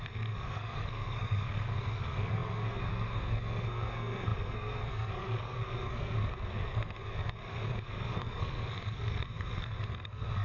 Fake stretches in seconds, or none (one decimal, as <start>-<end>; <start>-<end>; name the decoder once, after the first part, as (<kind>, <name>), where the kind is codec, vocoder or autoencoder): 0.0-10.4 (codec, SNAC)